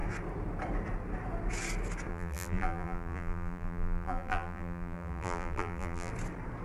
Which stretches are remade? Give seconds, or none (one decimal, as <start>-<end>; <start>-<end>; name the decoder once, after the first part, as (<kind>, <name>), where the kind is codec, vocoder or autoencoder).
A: 2.1-6.1 (vocoder, BigVGAN v2)